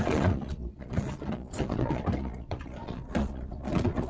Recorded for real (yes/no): no